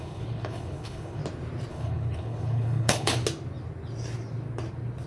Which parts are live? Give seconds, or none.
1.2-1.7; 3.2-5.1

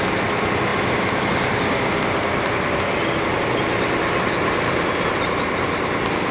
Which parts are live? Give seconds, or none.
0.0-6.3